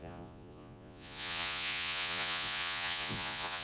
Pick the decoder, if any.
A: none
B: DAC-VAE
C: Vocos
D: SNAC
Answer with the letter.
C